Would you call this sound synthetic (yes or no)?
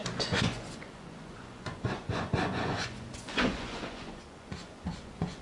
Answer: yes